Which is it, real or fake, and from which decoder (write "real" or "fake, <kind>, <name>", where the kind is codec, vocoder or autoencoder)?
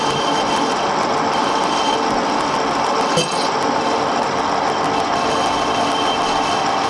real